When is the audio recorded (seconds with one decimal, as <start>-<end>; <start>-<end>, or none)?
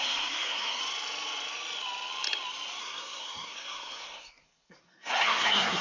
0.8-2.8